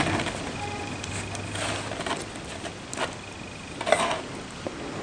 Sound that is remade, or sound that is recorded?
recorded